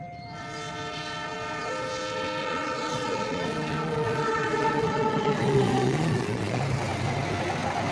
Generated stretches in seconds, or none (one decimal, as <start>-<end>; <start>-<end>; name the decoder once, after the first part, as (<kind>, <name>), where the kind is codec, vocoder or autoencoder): 2.4-6.6 (vocoder, Vocos)